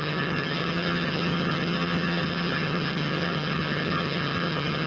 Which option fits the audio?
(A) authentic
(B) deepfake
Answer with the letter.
B